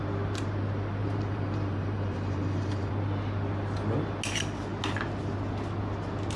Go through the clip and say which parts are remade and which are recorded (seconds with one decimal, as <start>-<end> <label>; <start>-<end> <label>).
0.0-1.0 recorded; 1.0-2.9 remade; 2.9-6.4 recorded